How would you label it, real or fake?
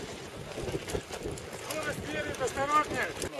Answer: real